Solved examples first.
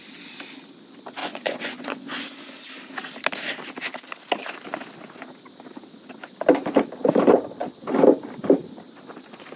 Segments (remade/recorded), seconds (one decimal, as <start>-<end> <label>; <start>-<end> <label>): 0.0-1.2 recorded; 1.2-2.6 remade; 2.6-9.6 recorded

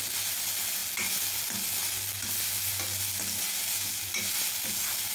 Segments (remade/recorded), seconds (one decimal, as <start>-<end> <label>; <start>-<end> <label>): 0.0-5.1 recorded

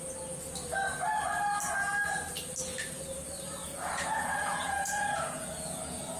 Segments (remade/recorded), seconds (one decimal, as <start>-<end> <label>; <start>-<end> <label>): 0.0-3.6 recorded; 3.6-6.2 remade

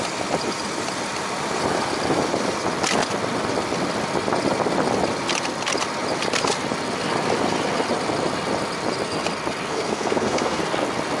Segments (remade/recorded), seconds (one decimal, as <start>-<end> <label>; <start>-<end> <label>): 0.0-9.7 recorded; 9.7-10.6 remade; 10.6-11.2 recorded

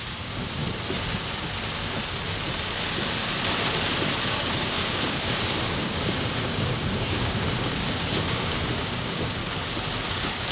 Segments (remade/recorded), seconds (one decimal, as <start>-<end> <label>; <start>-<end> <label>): 0.0-0.6 remade; 0.6-4.3 recorded; 4.3-9.4 remade; 9.4-10.0 recorded; 10.0-10.5 remade